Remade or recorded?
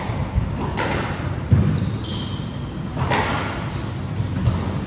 recorded